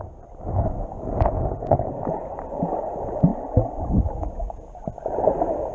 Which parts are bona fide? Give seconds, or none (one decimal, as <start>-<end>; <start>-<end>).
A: 0.0-5.7